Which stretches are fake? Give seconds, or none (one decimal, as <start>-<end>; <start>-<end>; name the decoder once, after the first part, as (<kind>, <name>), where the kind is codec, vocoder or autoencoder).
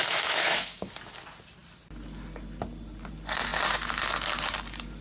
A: 0.0-0.9 (autoencoder, DAC-VAE)